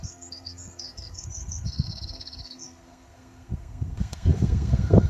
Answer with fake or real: fake